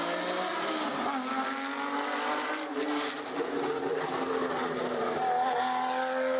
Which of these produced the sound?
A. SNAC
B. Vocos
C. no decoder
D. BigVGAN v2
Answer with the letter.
C